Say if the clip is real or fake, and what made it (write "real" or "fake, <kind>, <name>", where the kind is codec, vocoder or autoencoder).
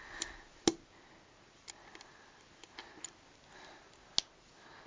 real